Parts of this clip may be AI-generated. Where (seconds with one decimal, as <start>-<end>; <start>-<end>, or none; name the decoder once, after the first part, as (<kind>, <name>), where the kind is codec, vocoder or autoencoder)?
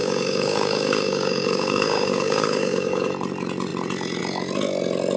0.0-3.1 (codec, DAC)